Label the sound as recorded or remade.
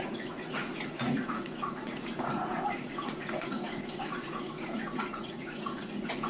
remade